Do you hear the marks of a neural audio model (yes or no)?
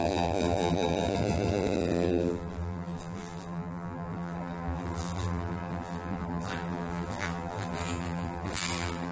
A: yes